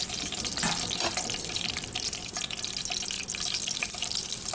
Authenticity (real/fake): real